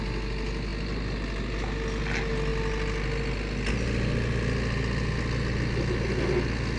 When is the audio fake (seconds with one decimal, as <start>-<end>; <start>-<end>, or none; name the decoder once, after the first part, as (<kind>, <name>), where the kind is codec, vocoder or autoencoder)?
none